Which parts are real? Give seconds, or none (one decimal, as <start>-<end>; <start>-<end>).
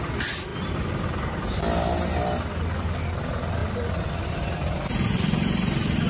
0.0-3.6